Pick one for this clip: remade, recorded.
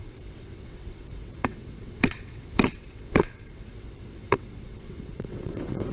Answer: remade